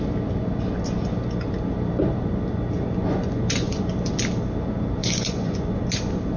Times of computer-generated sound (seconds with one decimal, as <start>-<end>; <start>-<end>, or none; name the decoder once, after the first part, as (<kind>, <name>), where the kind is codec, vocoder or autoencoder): 3.0-3.8 (vocoder, Vocos); 5.0-5.8